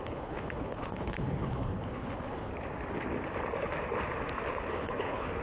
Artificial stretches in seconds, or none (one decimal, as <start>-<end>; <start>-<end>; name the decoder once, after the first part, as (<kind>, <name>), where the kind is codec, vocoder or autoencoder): 0.0-2.5 (codec, HILCodec); 4.7-5.4